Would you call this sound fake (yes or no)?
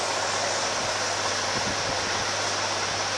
no